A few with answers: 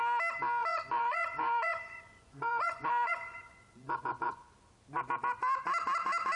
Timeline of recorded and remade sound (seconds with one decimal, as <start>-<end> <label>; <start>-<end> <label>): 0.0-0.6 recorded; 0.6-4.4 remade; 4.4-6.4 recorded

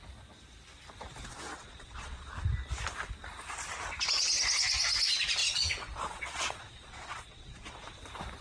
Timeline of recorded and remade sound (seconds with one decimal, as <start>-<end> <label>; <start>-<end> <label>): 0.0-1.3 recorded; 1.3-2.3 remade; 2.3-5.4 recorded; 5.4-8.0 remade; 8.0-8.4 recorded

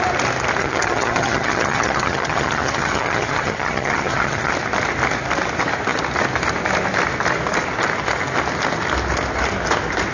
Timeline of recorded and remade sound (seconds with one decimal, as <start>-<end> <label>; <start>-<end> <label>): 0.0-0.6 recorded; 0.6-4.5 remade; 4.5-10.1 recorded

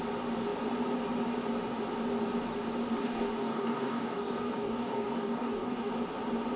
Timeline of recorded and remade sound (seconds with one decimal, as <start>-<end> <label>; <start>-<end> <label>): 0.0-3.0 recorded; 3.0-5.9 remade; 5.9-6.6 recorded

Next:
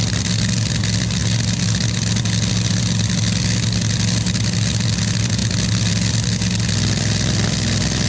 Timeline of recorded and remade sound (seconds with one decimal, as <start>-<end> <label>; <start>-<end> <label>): 0.0-8.1 recorded